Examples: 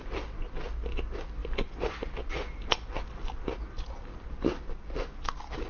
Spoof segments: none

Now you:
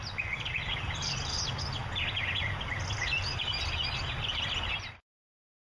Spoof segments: none

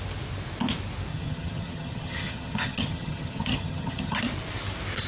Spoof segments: 1.1-4.2

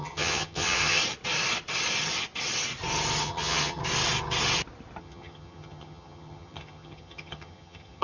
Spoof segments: 0.0-1.0; 3.2-3.8; 5.0-8.0

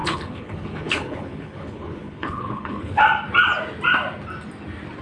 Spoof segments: 0.0-3.0

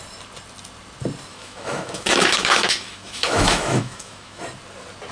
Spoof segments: 1.3-4.4

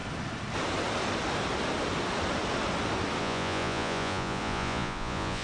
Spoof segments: 3.2-5.4